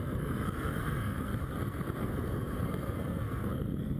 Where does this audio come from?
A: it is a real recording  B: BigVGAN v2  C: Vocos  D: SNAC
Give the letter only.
D